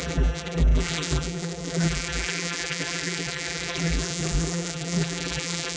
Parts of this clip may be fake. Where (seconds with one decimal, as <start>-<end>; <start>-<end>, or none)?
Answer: 0.0-5.8